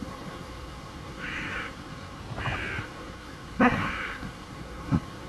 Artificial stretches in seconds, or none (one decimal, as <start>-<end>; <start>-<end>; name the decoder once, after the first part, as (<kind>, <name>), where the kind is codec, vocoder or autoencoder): 0.0-2.2 (codec, SNAC); 2.8-5.3